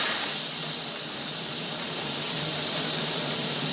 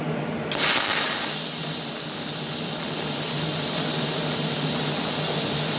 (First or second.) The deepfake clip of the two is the first